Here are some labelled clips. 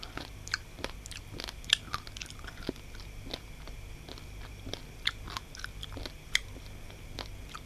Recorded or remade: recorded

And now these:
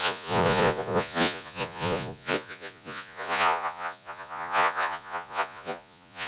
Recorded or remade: remade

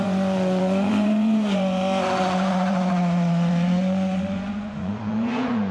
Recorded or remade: remade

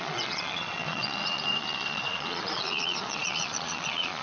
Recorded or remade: remade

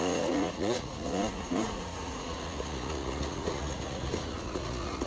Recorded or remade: remade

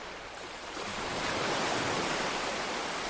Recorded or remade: recorded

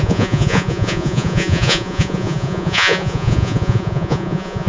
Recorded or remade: remade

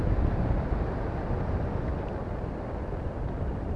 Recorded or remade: recorded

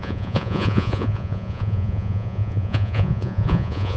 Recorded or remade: remade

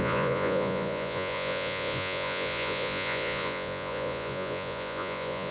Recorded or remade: remade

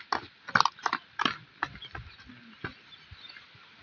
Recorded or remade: recorded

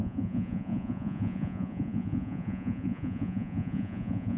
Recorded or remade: remade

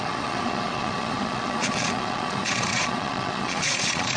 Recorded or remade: remade